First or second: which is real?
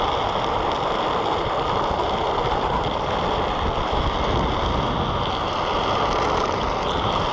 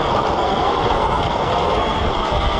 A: first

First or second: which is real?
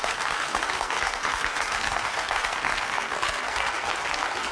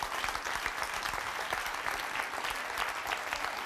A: second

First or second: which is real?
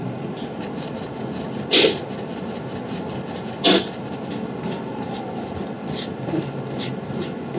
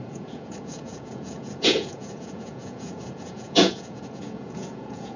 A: first